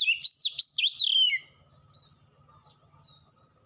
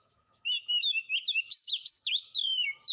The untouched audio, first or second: first